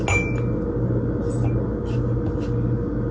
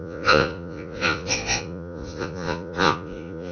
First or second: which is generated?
second